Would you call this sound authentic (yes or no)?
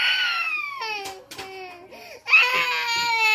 yes